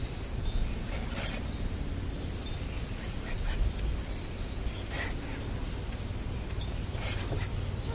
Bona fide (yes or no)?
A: yes